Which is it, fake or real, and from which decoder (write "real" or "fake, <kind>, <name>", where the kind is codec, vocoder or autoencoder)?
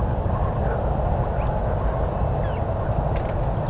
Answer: real